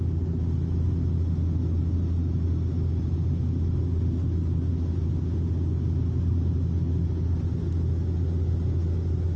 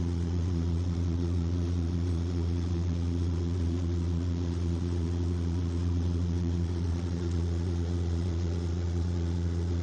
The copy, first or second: second